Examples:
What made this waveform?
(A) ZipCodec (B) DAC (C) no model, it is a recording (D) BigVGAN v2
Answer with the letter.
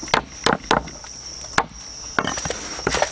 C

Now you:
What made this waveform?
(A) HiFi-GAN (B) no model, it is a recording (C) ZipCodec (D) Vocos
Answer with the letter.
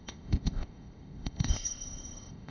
C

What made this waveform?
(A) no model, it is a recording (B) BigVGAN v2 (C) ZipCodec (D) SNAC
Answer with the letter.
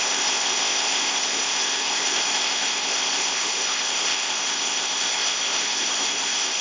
C